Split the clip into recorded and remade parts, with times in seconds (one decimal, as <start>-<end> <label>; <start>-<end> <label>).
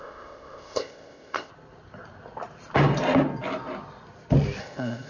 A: 0.0-1.5 remade; 1.5-4.6 recorded; 4.6-5.1 remade